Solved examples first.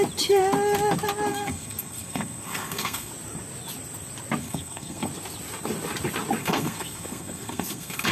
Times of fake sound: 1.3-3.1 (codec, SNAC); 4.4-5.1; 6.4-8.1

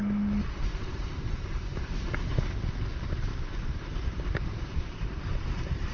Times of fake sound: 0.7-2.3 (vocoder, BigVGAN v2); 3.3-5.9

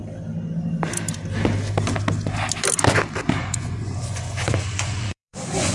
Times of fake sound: 3.4-5.7 (vocoder, Vocos)